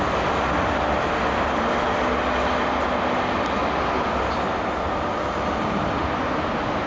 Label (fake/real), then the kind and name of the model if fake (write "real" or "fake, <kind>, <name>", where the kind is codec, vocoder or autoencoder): real